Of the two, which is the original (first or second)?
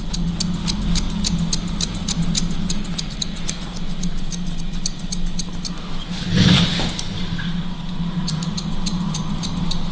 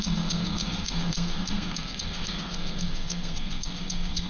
first